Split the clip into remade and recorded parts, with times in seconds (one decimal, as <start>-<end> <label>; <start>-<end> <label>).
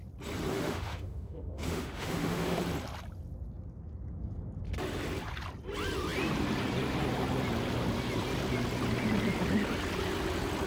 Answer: 0.0-0.5 recorded; 0.5-2.6 remade; 2.6-10.7 recorded